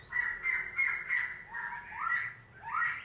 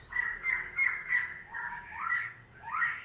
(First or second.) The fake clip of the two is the second